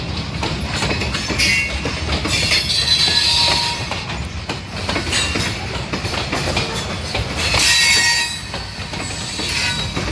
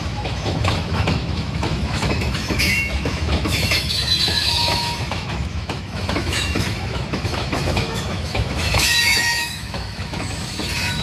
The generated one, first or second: second